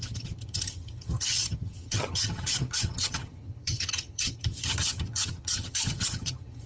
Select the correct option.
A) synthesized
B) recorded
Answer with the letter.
A